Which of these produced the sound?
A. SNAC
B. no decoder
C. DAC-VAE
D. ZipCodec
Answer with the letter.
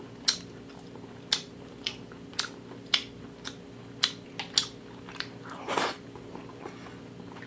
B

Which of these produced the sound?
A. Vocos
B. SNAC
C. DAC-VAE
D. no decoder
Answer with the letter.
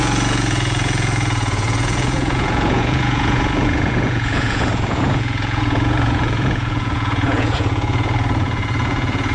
A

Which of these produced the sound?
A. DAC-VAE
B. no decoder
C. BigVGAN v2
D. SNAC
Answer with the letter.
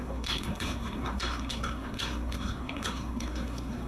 D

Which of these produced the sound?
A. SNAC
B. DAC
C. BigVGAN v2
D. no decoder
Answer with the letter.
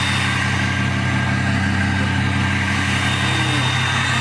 D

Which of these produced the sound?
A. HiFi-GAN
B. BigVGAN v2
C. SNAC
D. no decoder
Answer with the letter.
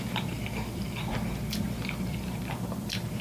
B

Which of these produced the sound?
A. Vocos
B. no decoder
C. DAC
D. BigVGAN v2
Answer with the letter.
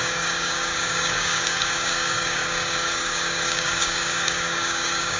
C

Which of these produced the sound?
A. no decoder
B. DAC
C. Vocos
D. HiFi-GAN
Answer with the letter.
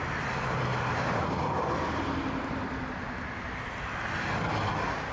A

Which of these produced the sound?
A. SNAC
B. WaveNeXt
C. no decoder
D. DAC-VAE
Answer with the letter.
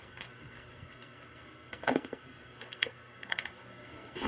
A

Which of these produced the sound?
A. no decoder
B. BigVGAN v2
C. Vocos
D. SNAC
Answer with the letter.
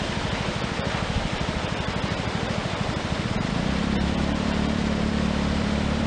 B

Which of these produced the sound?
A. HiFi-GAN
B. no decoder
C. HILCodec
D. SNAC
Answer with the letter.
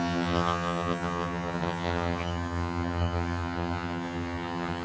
A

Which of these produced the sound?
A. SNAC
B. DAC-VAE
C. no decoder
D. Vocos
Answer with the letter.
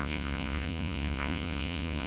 D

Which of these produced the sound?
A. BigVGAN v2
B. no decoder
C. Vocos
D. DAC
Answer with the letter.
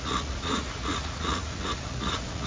C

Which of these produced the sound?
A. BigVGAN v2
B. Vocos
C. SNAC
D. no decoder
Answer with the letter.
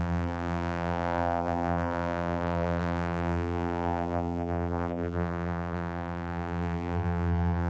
A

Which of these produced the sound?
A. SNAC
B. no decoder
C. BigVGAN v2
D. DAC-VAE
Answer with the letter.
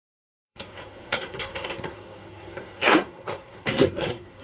A